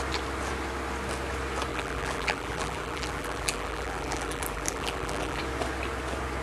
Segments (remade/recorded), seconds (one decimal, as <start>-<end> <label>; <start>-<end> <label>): 0.0-1.7 recorded; 1.7-5.4 remade; 5.4-6.4 recorded